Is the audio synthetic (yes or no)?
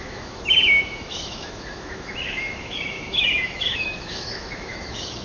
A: yes